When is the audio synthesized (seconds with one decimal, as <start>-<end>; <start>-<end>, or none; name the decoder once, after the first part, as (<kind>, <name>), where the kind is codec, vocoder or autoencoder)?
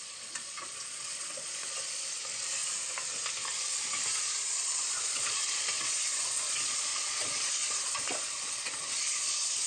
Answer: 0.0-2.2 (vocoder, Vocos); 4.2-9.7